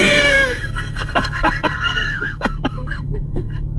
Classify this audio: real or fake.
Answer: fake